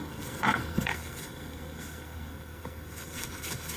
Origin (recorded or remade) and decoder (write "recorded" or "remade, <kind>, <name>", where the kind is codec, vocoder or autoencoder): remade, codec, SNAC